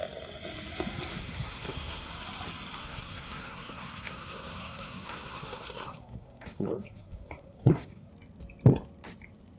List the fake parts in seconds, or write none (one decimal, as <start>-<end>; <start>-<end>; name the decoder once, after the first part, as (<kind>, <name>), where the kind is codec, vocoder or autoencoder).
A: 1.2-2.1 (codec, SNAC); 2.8-8.1